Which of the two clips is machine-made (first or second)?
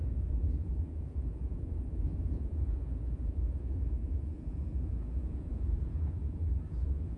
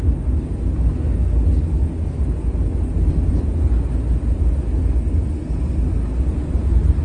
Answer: first